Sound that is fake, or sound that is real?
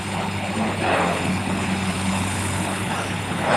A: fake